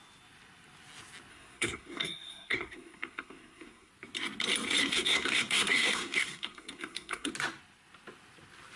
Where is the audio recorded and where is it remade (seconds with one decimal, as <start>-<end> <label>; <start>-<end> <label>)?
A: 0.0-1.3 recorded; 1.3-3.9 remade; 3.9-4.8 recorded; 4.8-7.3 remade; 7.3-8.8 recorded